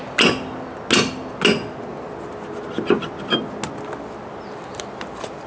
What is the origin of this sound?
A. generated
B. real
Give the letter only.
B